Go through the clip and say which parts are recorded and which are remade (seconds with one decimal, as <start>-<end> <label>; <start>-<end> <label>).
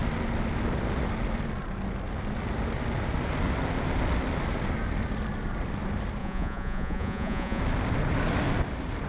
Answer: 0.0-6.2 recorded; 6.2-7.6 remade; 7.6-9.1 recorded